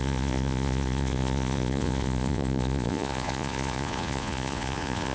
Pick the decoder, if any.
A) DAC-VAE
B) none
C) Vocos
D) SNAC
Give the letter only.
C